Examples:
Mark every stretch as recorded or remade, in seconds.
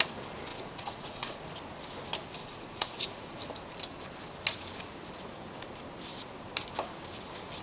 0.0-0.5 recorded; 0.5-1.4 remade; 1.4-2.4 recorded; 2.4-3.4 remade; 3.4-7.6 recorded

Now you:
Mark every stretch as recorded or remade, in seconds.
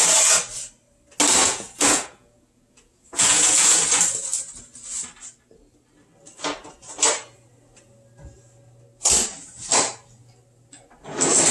0.0-1.4 recorded; 1.4-3.9 remade; 3.9-11.5 recorded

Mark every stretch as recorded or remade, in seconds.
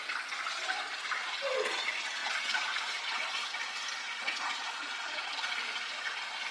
0.0-2.2 recorded; 2.2-5.5 remade; 5.5-6.5 recorded